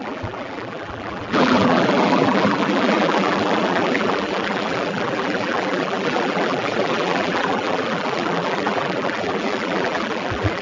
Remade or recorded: remade